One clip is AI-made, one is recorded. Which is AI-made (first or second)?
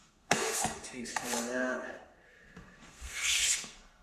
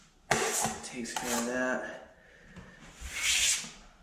first